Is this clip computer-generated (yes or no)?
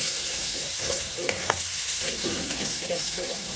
yes